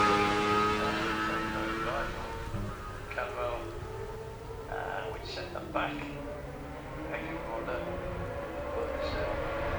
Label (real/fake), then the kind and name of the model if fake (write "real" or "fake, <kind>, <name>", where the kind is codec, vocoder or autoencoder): real